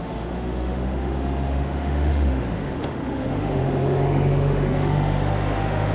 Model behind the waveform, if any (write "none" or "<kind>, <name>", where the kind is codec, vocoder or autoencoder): autoencoder, DAC-VAE